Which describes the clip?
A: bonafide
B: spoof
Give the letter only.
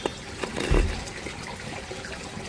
A